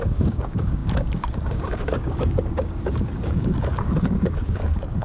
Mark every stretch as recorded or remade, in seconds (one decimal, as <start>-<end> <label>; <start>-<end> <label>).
0.0-5.0 remade